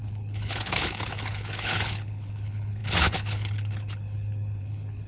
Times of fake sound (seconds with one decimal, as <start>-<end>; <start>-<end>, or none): 0.0-5.1